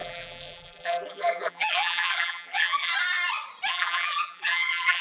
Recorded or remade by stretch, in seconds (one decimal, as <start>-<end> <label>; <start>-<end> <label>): 0.0-2.9 remade; 2.9-3.7 recorded; 3.7-5.0 remade